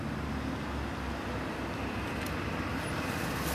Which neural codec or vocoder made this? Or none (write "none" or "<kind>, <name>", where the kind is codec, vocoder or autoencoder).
none